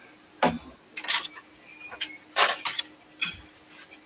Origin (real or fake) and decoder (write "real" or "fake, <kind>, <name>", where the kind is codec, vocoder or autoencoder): real